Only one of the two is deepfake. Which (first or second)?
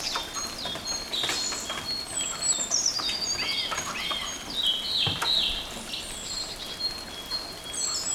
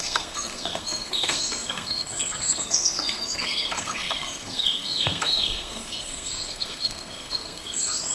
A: second